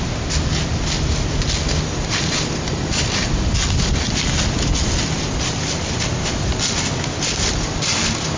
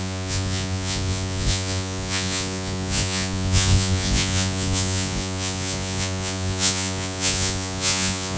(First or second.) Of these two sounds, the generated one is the second